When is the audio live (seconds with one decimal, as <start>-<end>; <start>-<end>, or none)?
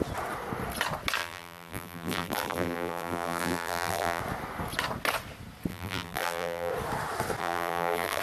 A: 0.0-1.2; 4.2-5.7; 6.7-7.4